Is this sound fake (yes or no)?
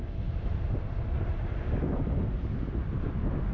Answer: no